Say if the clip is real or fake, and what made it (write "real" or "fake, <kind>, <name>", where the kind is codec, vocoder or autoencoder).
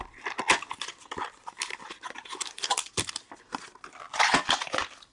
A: real